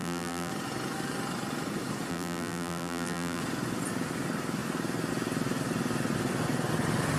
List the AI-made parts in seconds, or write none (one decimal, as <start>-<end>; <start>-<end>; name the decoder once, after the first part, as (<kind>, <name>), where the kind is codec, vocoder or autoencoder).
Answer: 0.0-0.5 (vocoder, BigVGAN v2); 2.1-3.4